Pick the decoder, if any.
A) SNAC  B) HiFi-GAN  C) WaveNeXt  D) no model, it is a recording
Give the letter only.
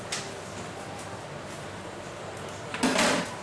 D